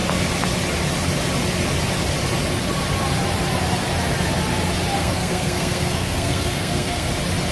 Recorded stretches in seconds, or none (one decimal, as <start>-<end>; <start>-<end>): 0.0-5.0; 7.1-7.5